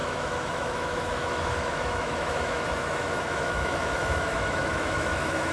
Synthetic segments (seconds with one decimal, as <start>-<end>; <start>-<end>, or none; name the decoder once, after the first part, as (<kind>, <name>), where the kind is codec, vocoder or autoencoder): 0.0-5.5 (autoencoder, DAC-VAE)